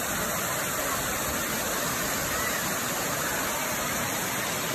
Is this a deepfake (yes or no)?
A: no